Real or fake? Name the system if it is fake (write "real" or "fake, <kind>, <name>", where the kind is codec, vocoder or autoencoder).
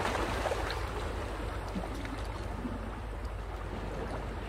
real